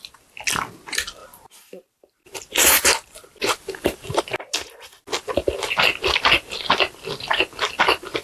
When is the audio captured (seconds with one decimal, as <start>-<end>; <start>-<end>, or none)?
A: 0.0-1.2; 4.2-8.2